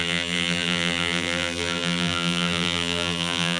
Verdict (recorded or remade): remade